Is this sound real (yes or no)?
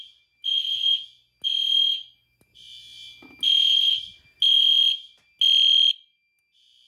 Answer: yes